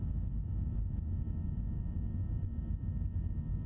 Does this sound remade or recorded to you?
recorded